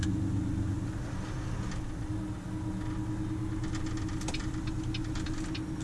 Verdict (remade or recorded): recorded